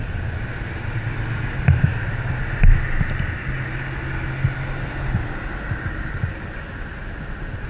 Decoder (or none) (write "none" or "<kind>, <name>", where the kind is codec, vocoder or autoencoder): none